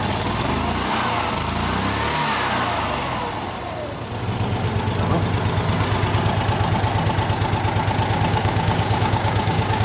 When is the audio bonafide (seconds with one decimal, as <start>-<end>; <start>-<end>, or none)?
0.0-8.3